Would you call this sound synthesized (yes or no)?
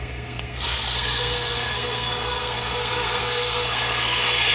yes